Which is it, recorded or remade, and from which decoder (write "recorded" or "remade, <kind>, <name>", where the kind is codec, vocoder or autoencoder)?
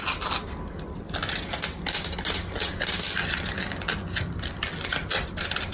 recorded